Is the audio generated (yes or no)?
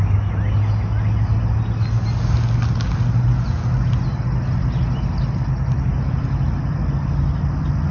no